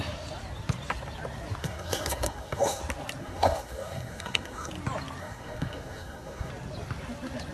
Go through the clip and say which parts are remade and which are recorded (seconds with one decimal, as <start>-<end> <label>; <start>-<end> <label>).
0.0-1.6 recorded; 1.6-2.8 remade; 2.8-3.2 recorded; 3.2-4.7 remade; 4.7-5.2 recorded; 5.2-6.5 remade; 6.5-7.5 recorded